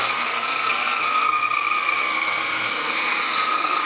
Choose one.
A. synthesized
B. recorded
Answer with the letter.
A